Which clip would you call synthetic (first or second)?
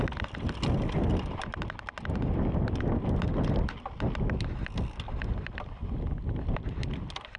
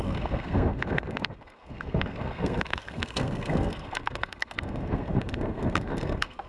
second